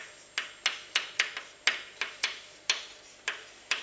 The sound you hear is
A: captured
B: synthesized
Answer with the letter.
A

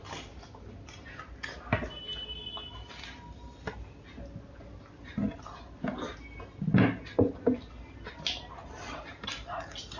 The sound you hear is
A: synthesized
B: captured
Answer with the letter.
B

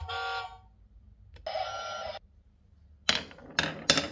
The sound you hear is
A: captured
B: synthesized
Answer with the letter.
A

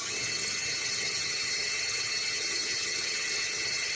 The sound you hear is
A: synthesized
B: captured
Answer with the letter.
A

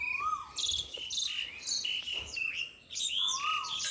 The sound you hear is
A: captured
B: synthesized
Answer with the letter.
A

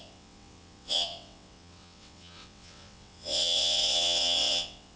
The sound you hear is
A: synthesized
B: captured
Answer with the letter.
A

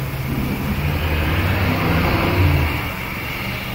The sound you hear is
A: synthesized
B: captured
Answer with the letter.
B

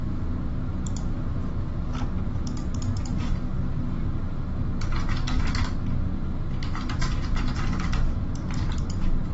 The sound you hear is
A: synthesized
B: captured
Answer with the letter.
B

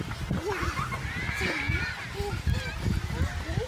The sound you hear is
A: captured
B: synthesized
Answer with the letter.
A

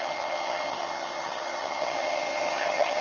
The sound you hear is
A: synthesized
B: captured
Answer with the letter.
A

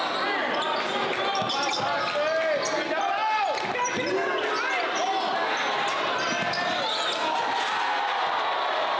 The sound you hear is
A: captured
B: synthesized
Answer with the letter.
A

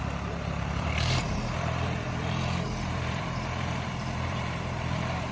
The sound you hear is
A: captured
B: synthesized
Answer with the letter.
B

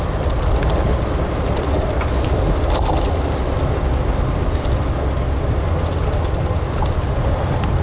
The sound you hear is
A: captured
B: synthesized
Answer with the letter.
A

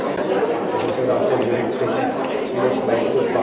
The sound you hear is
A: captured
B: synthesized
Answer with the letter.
A